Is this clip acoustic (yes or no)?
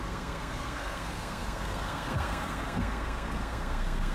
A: no